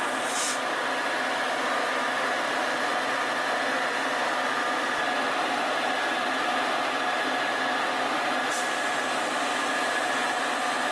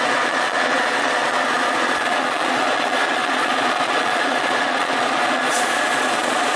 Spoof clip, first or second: second